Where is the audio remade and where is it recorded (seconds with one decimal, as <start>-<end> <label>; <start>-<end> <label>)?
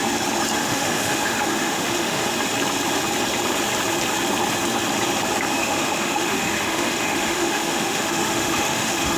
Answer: 0.0-0.6 recorded; 0.6-2.3 remade; 2.3-5.6 recorded; 5.6-9.2 remade